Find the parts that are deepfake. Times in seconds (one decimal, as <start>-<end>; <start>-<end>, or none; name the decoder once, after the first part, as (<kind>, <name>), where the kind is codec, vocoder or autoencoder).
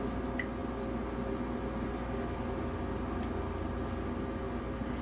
none